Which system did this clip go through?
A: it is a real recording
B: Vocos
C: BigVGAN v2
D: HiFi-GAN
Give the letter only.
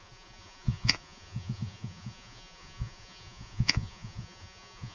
B